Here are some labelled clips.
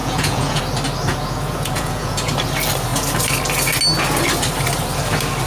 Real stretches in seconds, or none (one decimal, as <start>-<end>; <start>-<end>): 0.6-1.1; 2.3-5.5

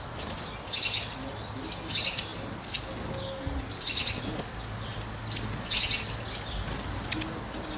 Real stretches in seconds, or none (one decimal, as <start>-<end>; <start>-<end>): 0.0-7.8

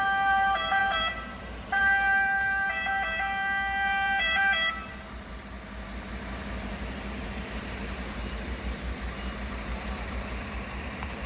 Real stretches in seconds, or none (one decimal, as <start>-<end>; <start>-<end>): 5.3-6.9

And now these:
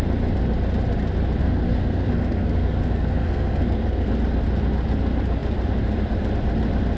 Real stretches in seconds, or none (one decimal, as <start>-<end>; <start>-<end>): 0.0-1.4; 4.1-7.0